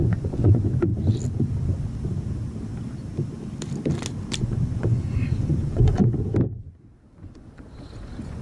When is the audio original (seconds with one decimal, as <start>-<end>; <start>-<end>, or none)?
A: 0.9-4.4; 6.0-7.1